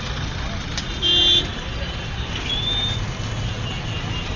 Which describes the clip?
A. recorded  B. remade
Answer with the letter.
A